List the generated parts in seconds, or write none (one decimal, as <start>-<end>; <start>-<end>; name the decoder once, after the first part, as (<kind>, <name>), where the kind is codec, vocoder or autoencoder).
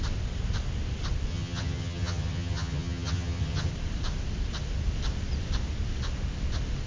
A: 1.3-3.7 (vocoder, HiFi-GAN)